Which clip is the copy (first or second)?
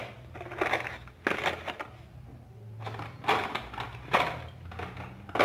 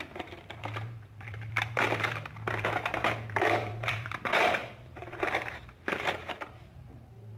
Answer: second